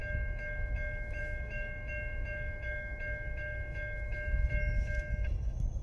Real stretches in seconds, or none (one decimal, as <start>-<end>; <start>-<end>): none